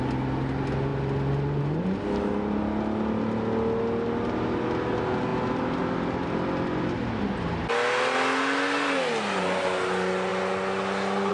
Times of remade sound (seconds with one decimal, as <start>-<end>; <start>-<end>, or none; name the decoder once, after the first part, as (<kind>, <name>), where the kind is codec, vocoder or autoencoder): none